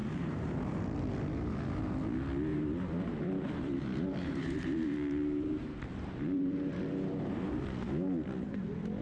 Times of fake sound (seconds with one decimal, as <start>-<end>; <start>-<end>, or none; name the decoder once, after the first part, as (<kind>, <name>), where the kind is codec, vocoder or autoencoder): 0.0-0.8 (vocoder, BigVGAN v2); 2.5-7.5